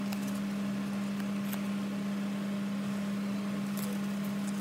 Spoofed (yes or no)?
no